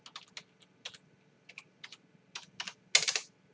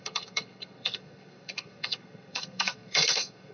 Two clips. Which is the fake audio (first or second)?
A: second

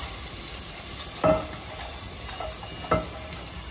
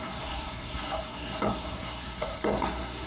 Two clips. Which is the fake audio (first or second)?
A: second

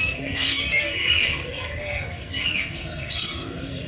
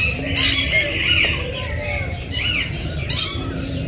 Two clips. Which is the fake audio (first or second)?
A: first